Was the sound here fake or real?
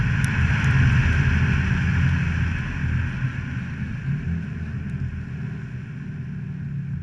real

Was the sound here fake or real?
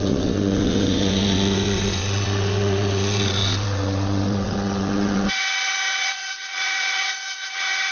fake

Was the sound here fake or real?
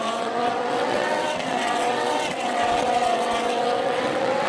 fake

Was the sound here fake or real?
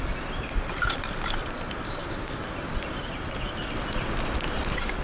real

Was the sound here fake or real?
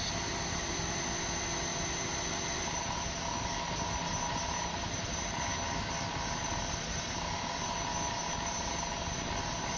real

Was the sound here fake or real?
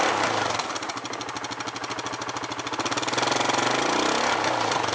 real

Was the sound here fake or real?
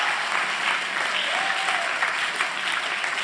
real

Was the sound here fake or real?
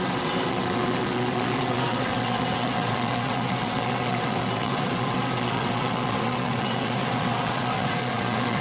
fake